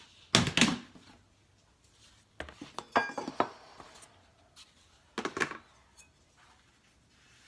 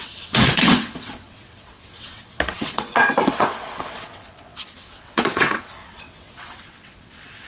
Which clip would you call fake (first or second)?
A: second